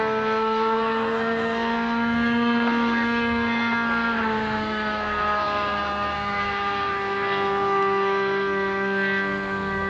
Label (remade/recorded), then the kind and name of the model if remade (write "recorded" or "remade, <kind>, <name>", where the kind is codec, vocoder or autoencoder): remade, codec, SNAC